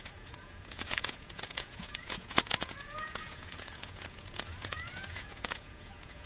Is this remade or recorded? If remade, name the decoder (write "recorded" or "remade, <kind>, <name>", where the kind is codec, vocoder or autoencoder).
remade, vocoder, Vocos